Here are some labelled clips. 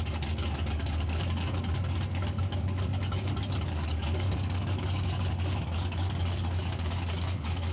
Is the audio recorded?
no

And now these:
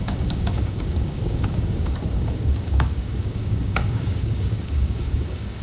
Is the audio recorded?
no